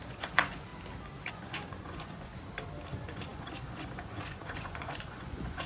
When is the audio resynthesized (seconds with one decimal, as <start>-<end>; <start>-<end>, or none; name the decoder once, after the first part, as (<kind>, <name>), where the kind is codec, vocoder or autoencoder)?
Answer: 0.0-0.7 (vocoder, Vocos); 1.3-2.3; 2.9-5.7